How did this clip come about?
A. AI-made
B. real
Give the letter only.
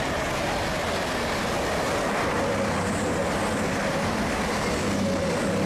B